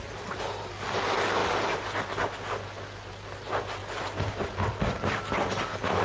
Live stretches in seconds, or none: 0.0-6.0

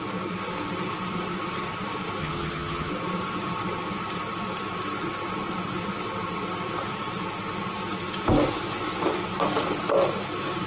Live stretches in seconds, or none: 0.0-2.2; 2.9-10.7

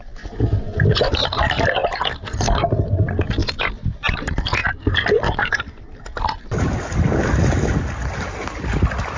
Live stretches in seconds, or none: 0.0-9.2

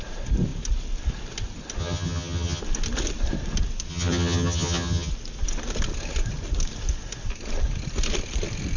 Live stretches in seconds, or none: 0.0-1.8; 2.6-3.9; 5.1-8.8

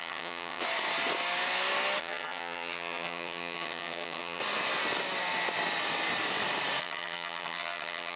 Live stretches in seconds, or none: 0.6-2.0; 4.4-6.8

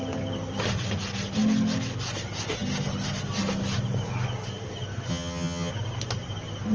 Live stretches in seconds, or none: 0.0-5.1; 5.7-6.7

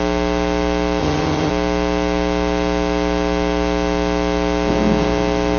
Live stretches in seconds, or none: 0.0-1.0; 1.5-5.6

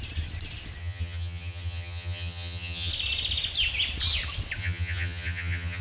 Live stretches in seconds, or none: 0.0-0.8; 2.9-4.6